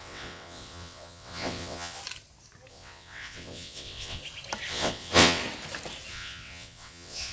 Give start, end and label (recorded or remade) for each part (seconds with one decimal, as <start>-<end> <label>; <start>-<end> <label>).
0.0-2.0 remade; 2.0-2.7 recorded; 2.7-4.2 remade; 4.2-4.7 recorded; 4.7-5.4 remade; 5.4-6.1 recorded; 6.1-7.3 remade